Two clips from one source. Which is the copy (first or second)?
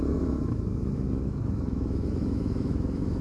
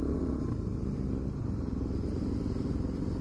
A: first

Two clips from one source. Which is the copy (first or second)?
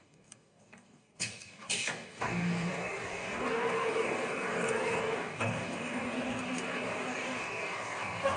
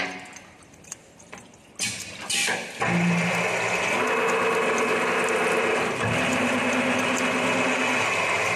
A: first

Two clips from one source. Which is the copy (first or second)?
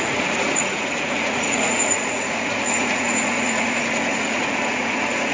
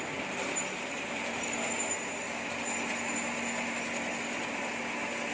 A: first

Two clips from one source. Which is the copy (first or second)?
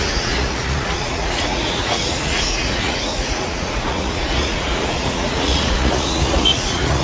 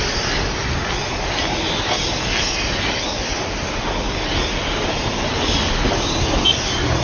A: first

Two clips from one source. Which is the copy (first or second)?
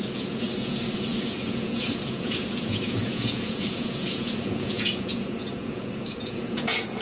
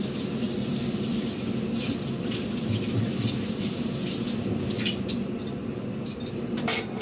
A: first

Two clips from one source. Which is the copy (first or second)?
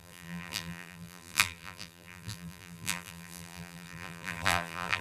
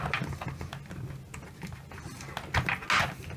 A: first